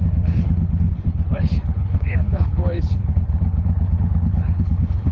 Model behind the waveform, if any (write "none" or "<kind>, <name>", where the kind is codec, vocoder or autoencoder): codec, HILCodec